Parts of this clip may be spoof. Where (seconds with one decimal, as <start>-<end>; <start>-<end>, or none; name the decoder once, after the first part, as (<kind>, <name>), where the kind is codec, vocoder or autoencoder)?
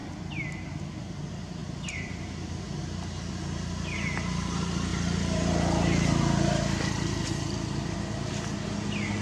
1.6-2.6 (vocoder, BigVGAN v2)